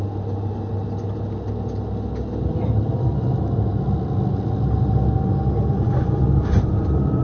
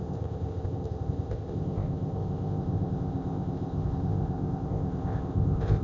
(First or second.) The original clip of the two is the first